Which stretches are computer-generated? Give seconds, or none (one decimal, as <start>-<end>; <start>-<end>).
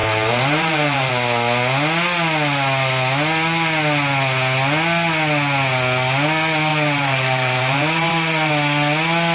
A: 0.0-1.1; 6.7-8.5